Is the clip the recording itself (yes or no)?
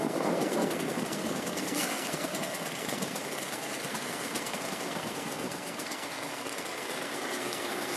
no